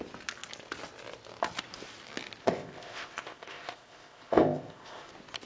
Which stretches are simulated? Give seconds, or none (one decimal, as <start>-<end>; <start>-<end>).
2.4-5.1

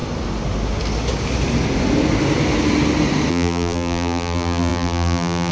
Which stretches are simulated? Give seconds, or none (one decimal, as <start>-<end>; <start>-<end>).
3.3-5.5

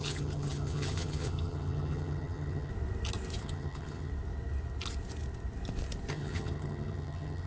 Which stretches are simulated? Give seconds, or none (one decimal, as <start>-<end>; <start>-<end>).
0.0-2.7; 3.4-4.1; 6.1-7.5

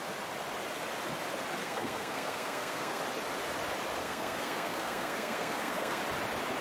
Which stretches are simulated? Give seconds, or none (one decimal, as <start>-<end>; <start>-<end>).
1.6-3.0; 4.0-6.0